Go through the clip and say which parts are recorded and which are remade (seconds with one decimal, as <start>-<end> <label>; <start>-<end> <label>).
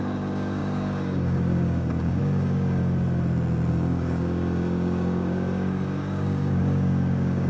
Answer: 0.0-2.8 remade; 2.8-3.7 recorded; 3.7-7.5 remade